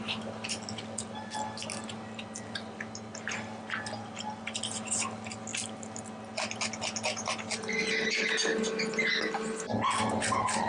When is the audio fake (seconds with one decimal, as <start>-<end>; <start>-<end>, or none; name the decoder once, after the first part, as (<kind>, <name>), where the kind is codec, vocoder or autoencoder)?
none